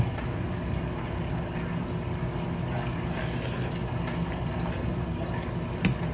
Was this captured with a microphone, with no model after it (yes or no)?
yes